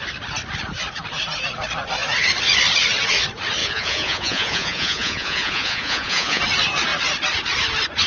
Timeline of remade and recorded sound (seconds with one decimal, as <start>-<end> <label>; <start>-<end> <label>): 0.0-3.6 recorded; 3.6-6.4 remade; 6.4-8.1 recorded